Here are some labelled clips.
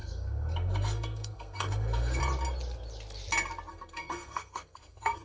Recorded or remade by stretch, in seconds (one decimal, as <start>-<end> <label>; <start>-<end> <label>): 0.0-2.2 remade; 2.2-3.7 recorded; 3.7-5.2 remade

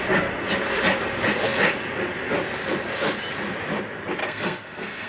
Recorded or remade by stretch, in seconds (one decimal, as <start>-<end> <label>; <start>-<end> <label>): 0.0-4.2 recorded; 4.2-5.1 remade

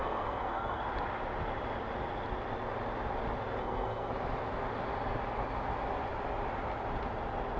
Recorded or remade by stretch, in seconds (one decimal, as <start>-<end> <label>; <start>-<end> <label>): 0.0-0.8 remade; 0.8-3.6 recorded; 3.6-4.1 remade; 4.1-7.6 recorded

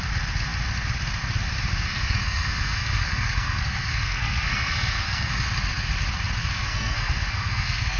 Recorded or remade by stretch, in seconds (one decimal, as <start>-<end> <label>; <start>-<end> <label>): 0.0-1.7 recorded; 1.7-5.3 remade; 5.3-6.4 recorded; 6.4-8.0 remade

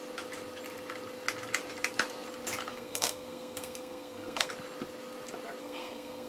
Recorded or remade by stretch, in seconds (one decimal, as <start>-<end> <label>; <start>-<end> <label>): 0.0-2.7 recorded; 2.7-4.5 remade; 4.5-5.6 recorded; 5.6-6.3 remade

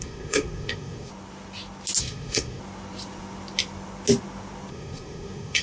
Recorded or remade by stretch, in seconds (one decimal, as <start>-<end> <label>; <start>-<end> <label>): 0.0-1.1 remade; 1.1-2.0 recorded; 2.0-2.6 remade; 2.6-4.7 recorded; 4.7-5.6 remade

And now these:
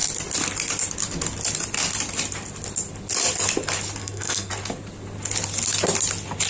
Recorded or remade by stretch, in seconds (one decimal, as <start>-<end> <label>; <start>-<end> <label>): 0.0-4.0 recorded; 4.0-4.5 remade; 4.5-6.5 recorded